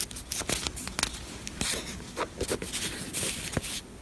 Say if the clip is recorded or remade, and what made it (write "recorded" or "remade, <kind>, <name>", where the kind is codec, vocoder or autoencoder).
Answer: recorded